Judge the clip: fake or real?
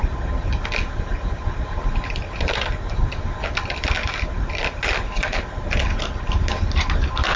real